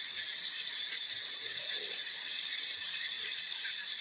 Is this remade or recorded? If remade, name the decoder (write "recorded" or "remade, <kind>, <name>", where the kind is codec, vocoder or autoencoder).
remade, vocoder, BigVGAN v2